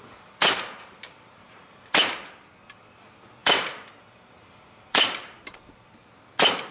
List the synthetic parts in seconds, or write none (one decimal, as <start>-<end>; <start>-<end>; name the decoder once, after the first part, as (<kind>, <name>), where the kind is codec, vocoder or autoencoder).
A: 0.4-2.1 (vocoder, BigVGAN v2); 3.4-6.1